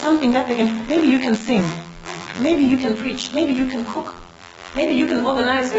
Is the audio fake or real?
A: fake